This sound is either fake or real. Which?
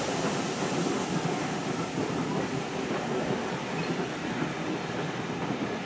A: real